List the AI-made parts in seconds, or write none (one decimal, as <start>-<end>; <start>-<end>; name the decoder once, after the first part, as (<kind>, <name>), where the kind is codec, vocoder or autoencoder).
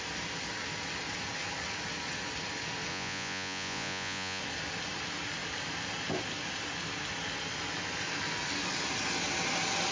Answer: 2.9-4.4 (vocoder, Vocos)